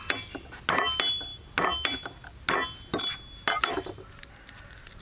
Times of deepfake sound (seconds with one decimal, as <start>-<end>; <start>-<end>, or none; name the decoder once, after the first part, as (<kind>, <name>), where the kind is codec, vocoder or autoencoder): none